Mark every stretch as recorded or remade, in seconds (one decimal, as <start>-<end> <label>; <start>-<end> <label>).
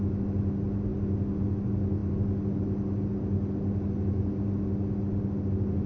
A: 0.0-5.9 recorded